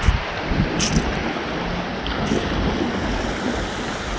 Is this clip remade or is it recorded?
recorded